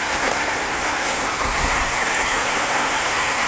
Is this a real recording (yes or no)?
no